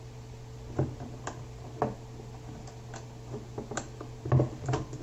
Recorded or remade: recorded